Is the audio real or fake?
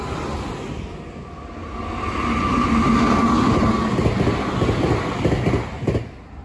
real